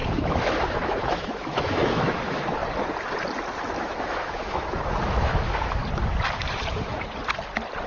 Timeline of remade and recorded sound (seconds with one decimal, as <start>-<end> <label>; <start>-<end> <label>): 0.0-2.6 remade; 2.6-3.8 recorded; 3.8-5.8 remade; 5.8-7.9 recorded